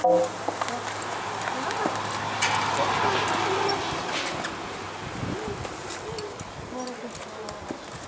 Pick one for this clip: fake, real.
real